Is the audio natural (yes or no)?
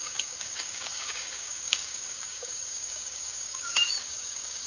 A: no